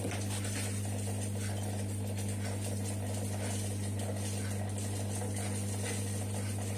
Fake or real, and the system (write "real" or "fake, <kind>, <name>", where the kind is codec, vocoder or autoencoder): real